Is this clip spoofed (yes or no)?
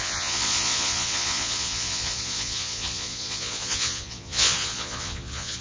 yes